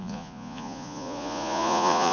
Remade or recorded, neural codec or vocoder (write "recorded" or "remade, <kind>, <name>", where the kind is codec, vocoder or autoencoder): remade, vocoder, Vocos